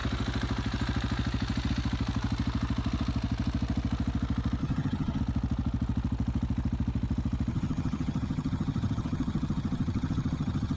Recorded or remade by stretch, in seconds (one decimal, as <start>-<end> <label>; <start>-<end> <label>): 0.0-4.6 recorded; 4.6-5.2 remade; 5.2-7.5 recorded; 7.5-10.8 remade